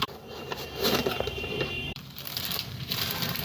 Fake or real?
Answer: fake